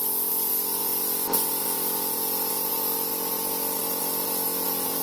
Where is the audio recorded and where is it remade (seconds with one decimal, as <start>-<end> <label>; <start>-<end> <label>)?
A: 0.0-5.0 recorded